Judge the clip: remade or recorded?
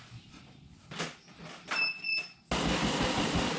recorded